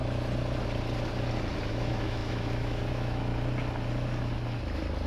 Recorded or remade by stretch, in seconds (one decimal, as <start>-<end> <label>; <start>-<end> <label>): 0.0-1.7 recorded; 1.7-3.3 remade; 3.3-5.1 recorded